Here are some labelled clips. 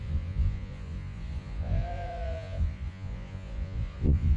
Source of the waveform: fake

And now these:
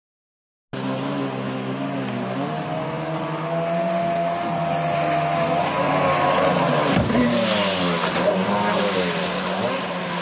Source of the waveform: real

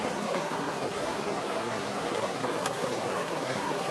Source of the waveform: fake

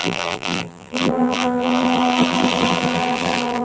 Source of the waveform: fake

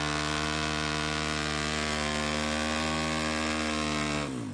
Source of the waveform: real